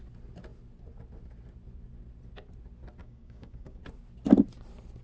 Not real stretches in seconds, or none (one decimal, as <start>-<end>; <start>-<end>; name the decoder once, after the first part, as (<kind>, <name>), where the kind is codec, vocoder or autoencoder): 3.0-3.8 (codec, DAC)